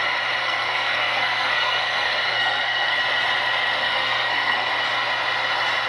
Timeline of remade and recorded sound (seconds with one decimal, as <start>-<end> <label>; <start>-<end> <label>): 0.0-0.4 recorded; 0.4-3.0 remade; 3.0-3.8 recorded; 3.8-4.7 remade; 4.7-5.9 recorded